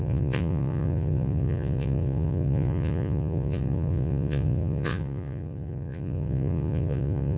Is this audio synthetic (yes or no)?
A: yes